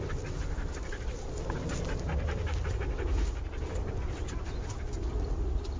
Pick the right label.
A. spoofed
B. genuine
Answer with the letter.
A